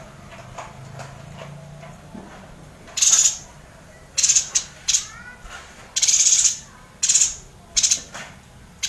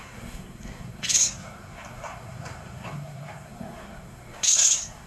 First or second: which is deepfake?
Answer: second